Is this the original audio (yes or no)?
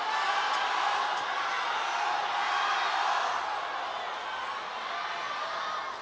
yes